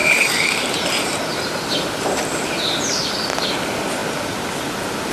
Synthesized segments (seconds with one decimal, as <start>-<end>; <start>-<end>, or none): 0.0-3.1